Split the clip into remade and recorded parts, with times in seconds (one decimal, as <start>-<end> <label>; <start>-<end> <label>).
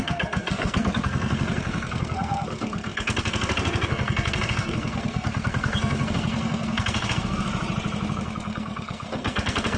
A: 0.0-7.5 remade; 7.5-8.1 recorded; 8.1-9.8 remade